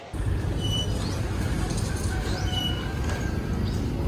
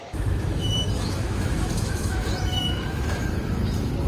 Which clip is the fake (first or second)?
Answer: second